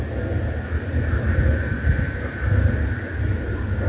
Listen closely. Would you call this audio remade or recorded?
recorded